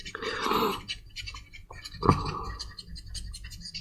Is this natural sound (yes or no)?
no